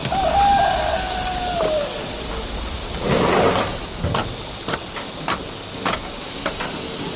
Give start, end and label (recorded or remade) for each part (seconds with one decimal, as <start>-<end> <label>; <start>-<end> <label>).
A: 0.0-7.2 recorded